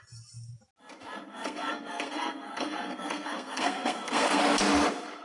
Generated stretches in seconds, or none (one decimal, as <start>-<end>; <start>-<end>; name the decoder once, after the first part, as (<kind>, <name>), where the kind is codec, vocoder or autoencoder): 1.3-4.4 (codec, SNAC)